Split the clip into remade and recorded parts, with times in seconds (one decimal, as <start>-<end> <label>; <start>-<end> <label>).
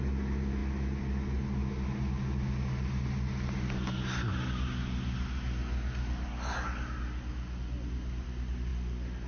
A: 0.0-9.3 recorded